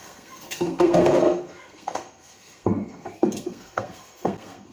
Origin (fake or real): fake